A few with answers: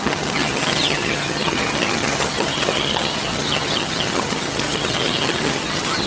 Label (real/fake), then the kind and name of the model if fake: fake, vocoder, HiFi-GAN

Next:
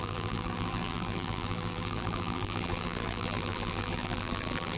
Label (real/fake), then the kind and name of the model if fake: fake, vocoder, BigVGAN v2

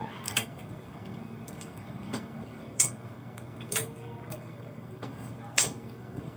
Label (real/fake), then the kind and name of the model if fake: fake, codec, SNAC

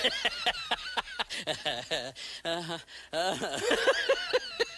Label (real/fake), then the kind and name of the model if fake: real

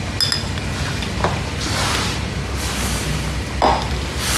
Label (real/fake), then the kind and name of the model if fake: real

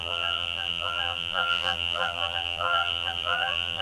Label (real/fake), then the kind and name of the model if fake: fake, vocoder, BigVGAN v2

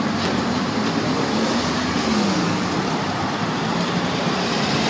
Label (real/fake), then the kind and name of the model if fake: fake, vocoder, BigVGAN v2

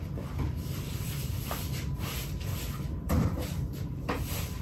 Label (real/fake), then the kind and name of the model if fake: fake, vocoder, BigVGAN v2